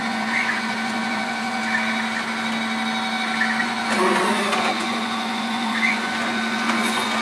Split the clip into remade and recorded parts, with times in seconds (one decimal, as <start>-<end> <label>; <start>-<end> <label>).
0.0-1.6 remade; 1.6-3.6 recorded; 3.6-7.2 remade